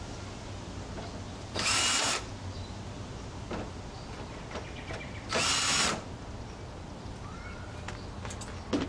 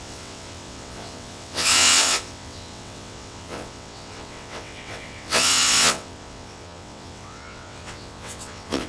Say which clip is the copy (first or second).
second